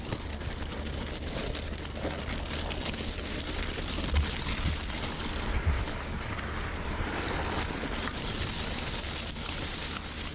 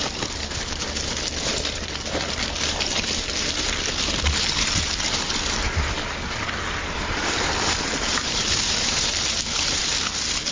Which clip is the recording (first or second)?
first